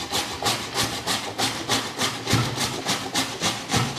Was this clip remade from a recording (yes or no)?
no